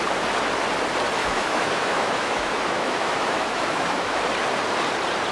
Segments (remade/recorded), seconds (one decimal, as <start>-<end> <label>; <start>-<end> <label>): 0.0-1.2 recorded; 1.2-4.2 remade; 4.2-5.3 recorded